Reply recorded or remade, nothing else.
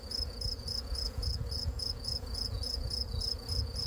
remade